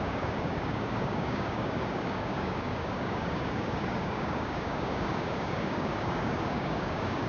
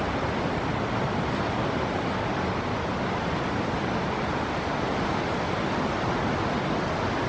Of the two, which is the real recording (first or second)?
second